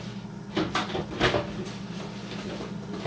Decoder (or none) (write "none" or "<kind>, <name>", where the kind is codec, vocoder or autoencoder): none